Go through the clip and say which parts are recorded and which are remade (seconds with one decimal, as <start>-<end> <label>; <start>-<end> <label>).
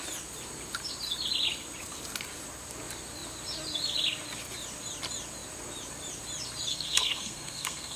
0.0-6.7 recorded; 6.7-8.0 remade